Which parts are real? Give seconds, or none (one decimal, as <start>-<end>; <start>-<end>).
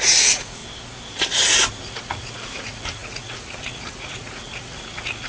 0.6-1.7